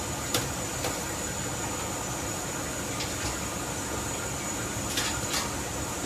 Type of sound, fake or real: real